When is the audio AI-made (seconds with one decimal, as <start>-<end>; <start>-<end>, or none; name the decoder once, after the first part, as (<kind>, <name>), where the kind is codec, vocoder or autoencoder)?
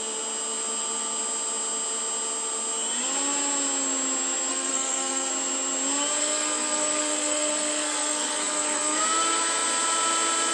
4.5-5.3 (codec, SNAC); 6.2-9.0